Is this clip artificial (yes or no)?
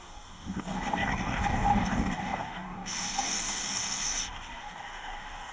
yes